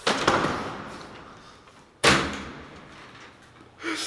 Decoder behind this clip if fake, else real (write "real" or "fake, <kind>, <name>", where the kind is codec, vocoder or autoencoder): fake, vocoder, BigVGAN v2